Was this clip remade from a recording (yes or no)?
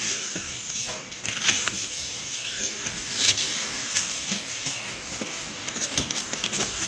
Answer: yes